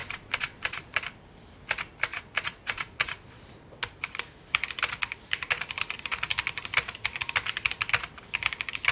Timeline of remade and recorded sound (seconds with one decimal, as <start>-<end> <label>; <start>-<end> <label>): 0.0-1.0 remade; 1.0-2.1 recorded; 2.1-3.4 remade; 3.4-8.9 recorded